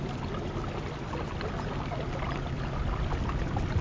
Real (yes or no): yes